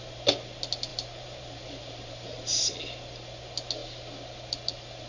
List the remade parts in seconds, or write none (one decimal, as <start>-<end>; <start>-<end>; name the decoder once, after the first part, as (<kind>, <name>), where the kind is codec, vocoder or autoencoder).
0.9-2.7 (vocoder, BigVGAN v2)